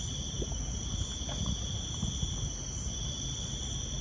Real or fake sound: real